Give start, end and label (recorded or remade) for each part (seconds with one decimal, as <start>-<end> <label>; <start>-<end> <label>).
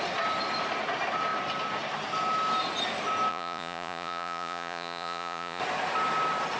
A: 0.0-3.3 recorded; 3.3-5.6 remade; 5.6-6.6 recorded